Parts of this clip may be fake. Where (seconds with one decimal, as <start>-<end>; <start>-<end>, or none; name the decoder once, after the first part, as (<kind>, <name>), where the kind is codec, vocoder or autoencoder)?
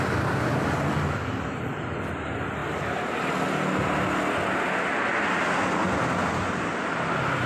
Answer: none